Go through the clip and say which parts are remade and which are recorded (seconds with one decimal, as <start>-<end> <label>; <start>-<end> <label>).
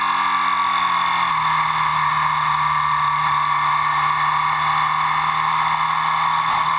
0.0-6.8 recorded